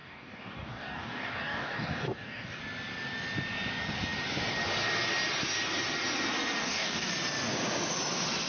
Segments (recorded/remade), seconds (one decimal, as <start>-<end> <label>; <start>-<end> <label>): 0.0-2.6 remade; 2.6-6.6 recorded; 6.6-7.1 remade; 7.1-8.5 recorded